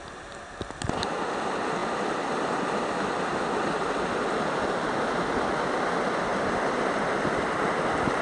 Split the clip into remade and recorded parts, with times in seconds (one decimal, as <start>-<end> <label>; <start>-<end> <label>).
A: 0.0-1.8 recorded; 1.8-5.0 remade; 5.0-6.3 recorded; 6.3-7.6 remade; 7.6-8.2 recorded